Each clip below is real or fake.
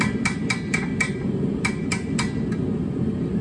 real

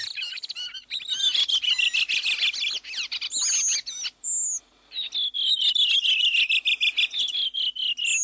real